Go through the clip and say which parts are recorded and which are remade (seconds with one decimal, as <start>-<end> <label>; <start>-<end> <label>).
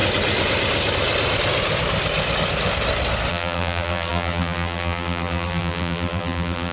0.0-3.3 recorded; 3.3-6.7 remade